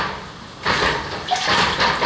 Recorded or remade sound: recorded